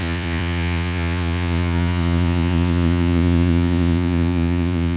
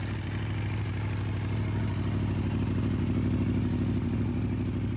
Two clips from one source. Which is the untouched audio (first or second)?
second